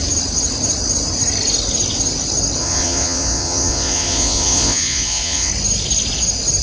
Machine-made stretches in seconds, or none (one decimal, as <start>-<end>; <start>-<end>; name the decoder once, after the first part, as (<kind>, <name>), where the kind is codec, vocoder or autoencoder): 2.6-5.5 (vocoder, Vocos)